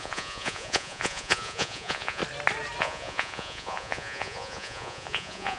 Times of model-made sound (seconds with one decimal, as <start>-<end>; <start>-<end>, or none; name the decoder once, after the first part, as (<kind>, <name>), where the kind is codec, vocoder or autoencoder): 0.0-2.2 (vocoder, Vocos); 2.8-5.6